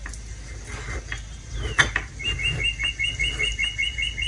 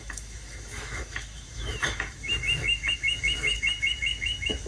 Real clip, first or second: first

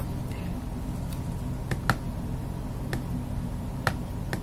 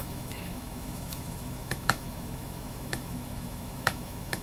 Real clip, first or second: first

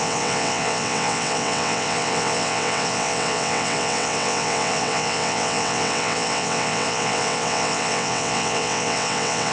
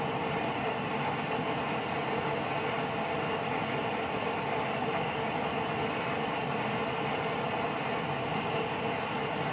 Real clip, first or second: second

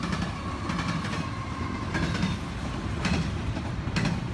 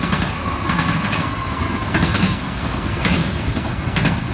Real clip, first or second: first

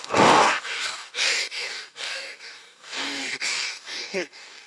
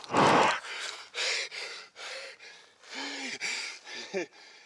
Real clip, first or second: second